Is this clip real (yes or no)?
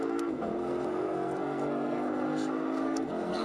no